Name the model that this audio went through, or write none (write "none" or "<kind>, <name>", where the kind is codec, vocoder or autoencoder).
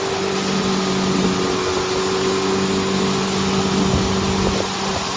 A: none